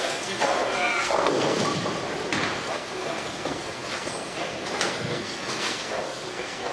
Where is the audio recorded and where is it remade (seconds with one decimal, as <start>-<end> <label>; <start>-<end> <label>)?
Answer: 0.0-1.6 remade; 1.6-2.5 recorded; 2.5-6.7 remade